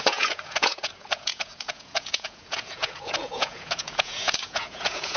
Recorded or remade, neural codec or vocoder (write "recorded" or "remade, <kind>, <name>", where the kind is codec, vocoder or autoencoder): remade, vocoder, Vocos